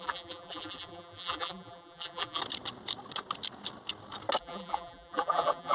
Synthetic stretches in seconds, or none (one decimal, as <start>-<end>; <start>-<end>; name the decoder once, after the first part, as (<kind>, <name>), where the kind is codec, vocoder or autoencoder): 0.0-2.4 (vocoder, BigVGAN v2); 4.4-5.7